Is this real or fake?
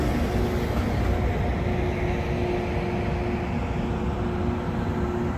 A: real